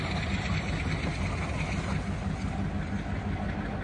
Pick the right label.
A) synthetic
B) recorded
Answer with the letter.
B